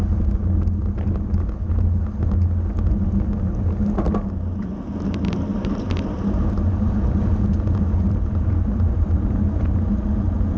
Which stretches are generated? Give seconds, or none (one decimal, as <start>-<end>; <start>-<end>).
5.5-9.6